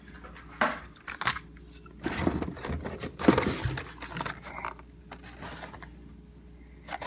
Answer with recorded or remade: recorded